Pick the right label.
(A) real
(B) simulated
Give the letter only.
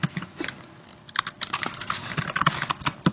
A